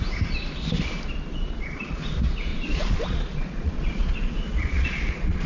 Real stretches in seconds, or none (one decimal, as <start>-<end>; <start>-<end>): 0.0-1.3; 2.1-2.5